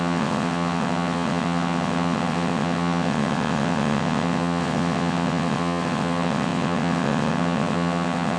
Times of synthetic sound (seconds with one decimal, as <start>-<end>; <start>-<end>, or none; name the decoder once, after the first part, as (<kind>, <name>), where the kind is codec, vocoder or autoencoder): 0.0-8.4 (vocoder, WaveNeXt)